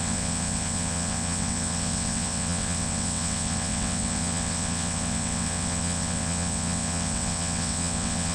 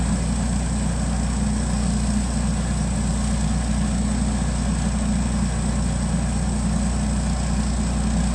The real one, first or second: second